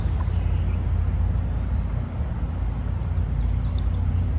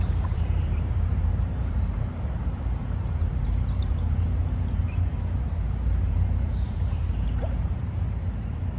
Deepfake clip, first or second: second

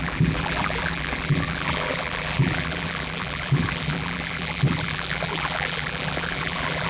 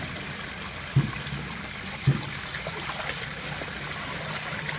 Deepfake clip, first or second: first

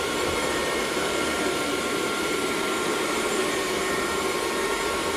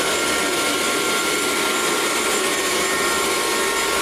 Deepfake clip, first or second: first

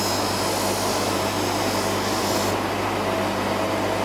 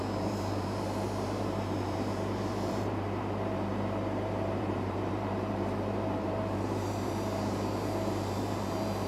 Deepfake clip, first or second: second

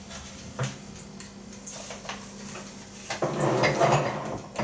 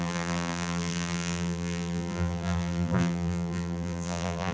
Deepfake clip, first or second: second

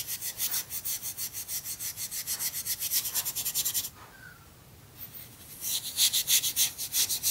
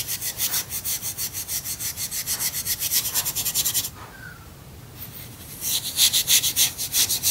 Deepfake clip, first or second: second